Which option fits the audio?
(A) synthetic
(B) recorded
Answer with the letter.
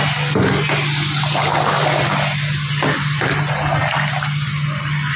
B